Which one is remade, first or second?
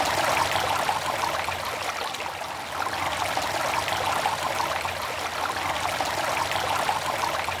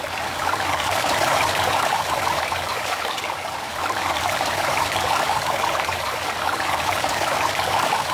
second